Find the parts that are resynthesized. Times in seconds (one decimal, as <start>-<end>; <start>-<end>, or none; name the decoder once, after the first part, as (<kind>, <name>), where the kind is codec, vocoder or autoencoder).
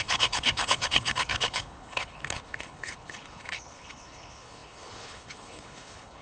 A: 0.0-6.2 (codec, HILCodec)